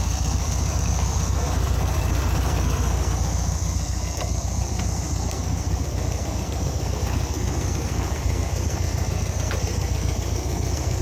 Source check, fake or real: fake